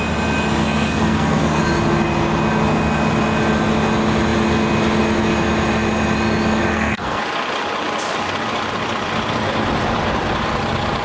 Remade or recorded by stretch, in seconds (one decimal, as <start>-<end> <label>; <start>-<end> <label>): 0.0-0.6 recorded; 0.6-1.6 remade; 1.6-6.7 recorded; 6.7-7.2 remade; 7.2-11.0 recorded